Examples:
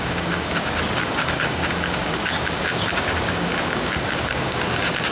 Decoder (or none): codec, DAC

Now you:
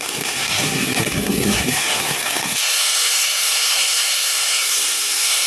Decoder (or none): codec, SNAC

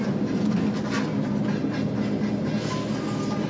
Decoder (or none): none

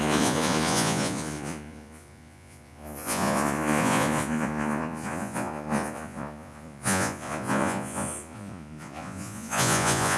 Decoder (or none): vocoder, Vocos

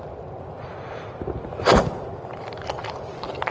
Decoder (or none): none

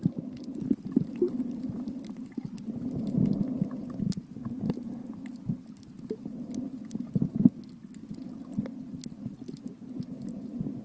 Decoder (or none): none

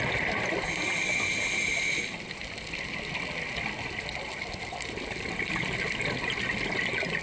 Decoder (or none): none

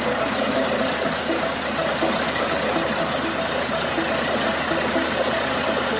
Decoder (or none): none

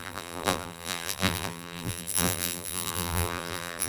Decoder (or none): vocoder, BigVGAN v2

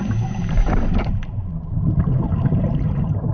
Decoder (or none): vocoder, BigVGAN v2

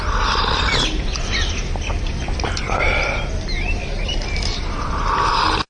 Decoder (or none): vocoder, BigVGAN v2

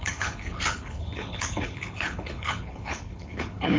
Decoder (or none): codec, HILCodec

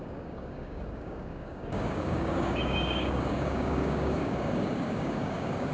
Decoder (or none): codec, DAC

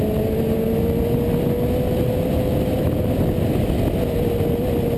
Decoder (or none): none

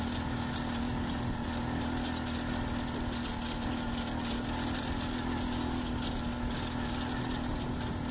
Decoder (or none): none